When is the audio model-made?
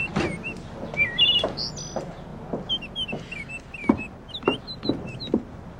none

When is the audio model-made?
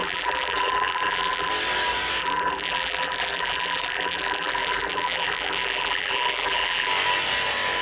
0.0-1.5 (vocoder, BigVGAN v2); 2.2-6.9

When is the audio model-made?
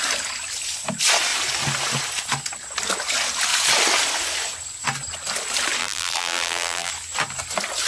5.8-6.9 (vocoder, BigVGAN v2)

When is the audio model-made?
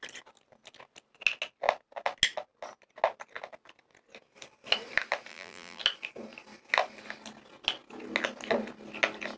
5.3-5.8 (vocoder, BigVGAN v2)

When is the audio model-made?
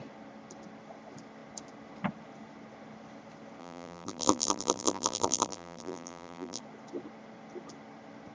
3.6-6.6 (vocoder, BigVGAN v2)